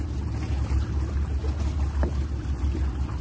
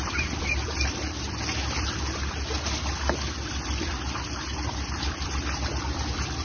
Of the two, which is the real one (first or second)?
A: first